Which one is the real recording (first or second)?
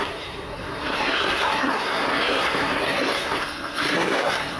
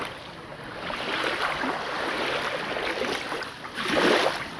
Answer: second